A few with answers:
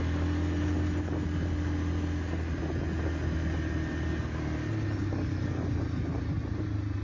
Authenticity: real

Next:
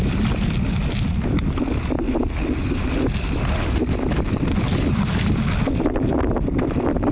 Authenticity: real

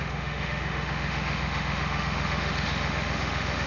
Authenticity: fake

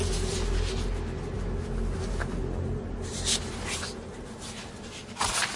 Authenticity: real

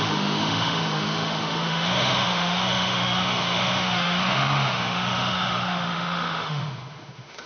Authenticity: fake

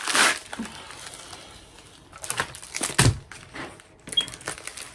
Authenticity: real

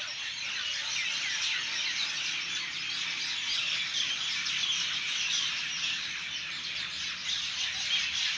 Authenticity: real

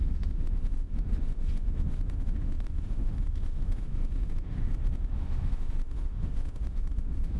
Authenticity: fake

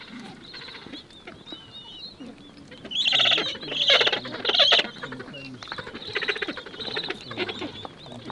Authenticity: real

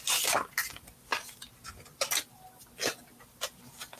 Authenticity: real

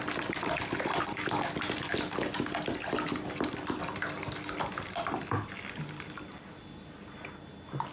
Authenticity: real